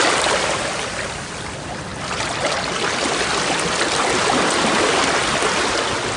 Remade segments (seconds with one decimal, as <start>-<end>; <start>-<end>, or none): none